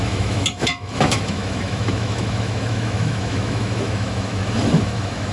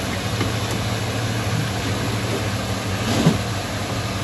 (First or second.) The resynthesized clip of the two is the first